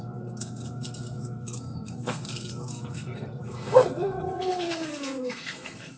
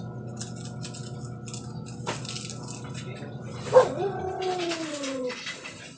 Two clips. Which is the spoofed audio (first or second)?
first